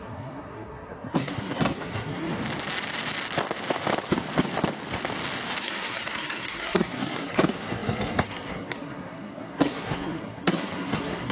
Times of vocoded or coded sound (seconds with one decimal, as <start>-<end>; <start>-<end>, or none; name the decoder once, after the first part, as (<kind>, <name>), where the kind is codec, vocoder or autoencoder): 0.0-2.3 (codec, SNAC); 5.6-11.3